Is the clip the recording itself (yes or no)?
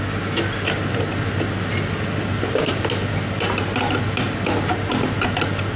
yes